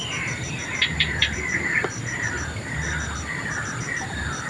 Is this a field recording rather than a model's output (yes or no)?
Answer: no